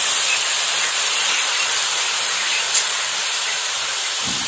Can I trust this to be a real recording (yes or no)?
yes